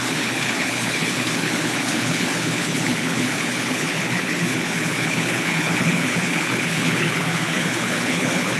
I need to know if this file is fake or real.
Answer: fake